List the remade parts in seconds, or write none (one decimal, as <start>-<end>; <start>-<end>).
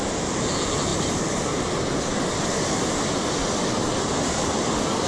0.9-2.3; 3.8-5.1